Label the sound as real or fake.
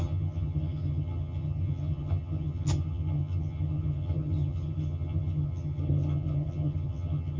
fake